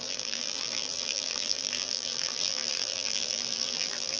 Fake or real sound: fake